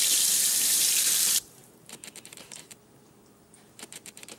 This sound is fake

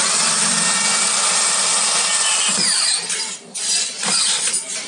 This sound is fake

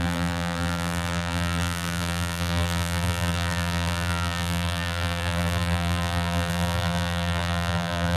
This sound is fake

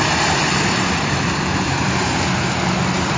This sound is fake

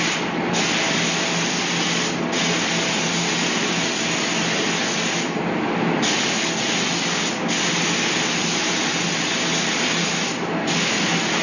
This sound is real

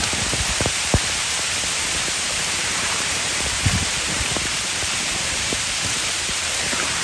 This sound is fake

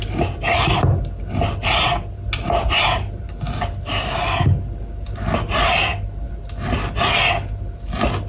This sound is real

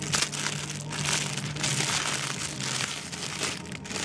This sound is real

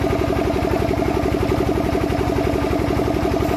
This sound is real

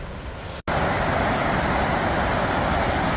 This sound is real